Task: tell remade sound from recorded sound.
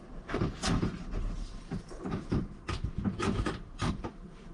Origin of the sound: remade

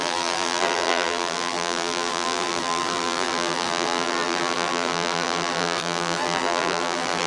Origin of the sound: remade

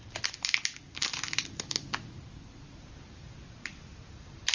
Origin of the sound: recorded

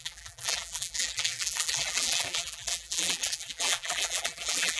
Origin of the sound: remade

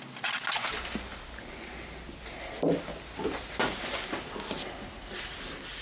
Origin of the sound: recorded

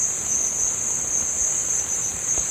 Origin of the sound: recorded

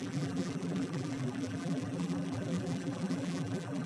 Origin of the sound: remade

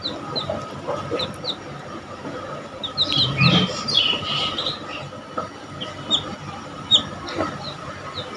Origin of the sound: remade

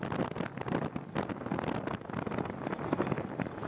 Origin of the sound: recorded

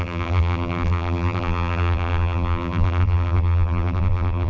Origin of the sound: remade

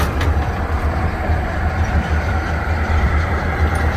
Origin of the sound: remade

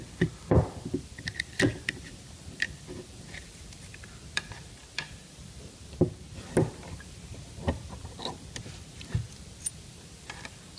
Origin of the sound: remade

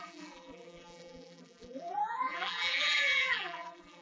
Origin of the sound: remade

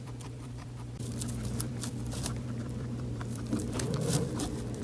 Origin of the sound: remade